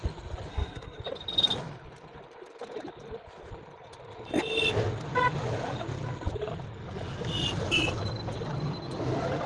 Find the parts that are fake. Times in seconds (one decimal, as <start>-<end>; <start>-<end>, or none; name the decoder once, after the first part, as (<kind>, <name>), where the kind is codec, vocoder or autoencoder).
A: 0.5-1.0 (codec, SNAC)